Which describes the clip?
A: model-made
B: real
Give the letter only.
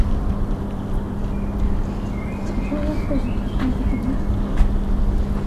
B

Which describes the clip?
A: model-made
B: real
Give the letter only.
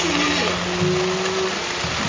B